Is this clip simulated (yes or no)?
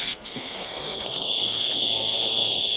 yes